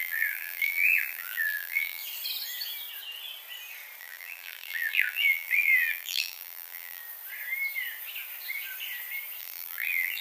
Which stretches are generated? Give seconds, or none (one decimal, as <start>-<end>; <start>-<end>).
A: 0.0-2.0; 4.0-7.0; 9.4-10.2